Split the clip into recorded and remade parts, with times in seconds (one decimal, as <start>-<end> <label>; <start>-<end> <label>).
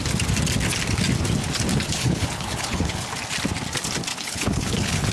0.0-1.7 recorded; 1.7-3.1 remade; 3.1-4.1 recorded; 4.1-5.1 remade